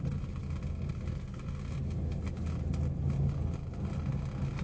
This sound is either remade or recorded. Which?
recorded